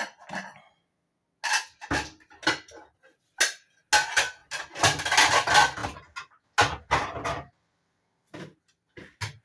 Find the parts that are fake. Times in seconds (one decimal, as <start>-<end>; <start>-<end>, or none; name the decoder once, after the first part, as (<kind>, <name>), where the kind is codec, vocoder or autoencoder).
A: none